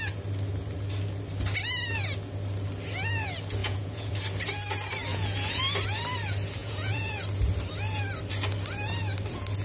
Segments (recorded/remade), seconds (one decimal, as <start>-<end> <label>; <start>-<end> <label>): 0.0-3.6 recorded; 3.6-4.1 remade; 4.1-5.1 recorded; 5.1-5.6 remade; 5.6-6.6 recorded; 6.6-7.2 remade; 7.2-9.6 recorded